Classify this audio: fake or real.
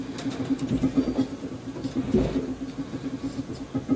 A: real